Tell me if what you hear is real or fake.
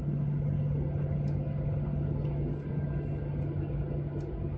real